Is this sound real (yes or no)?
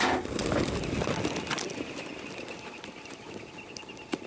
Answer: yes